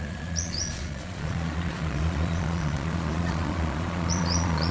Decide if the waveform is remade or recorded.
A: remade